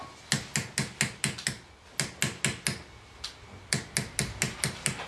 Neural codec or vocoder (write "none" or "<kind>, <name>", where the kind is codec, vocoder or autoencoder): none